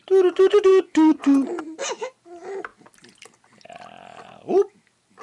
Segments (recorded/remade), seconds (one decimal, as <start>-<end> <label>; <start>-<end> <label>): 0.0-0.7 recorded; 0.7-1.6 remade; 1.6-5.2 recorded